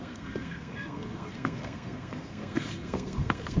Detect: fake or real fake